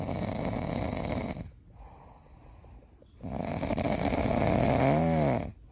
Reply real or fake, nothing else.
real